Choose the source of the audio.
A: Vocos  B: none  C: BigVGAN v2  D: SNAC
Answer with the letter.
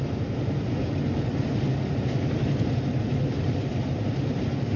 B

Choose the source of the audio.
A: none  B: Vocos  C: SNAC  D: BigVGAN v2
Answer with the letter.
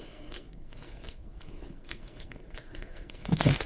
C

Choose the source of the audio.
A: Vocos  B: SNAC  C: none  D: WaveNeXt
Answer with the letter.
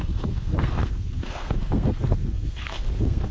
B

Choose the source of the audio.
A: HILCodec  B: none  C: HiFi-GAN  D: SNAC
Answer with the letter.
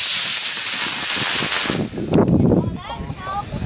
B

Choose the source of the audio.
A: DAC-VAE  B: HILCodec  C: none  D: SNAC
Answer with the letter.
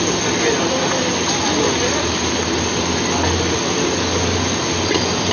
C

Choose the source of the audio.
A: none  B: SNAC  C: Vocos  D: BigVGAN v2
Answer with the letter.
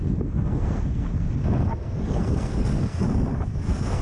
B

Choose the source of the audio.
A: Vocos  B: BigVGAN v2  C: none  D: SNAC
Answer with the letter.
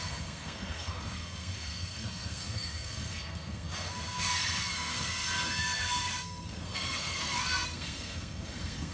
D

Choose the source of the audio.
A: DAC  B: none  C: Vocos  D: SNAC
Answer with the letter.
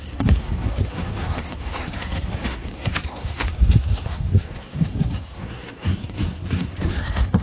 D